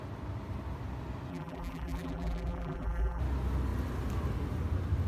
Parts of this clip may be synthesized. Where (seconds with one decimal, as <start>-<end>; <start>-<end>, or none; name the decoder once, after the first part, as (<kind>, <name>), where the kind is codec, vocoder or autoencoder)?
1.3-3.2 (vocoder, BigVGAN v2)